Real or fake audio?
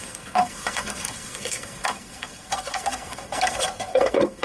fake